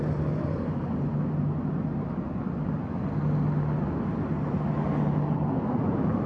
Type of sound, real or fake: real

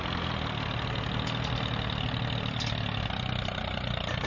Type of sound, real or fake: real